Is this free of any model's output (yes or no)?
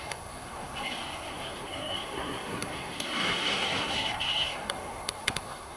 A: no